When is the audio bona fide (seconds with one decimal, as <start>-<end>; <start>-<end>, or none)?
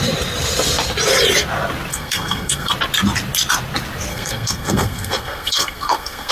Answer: 0.0-1.9; 2.7-4.1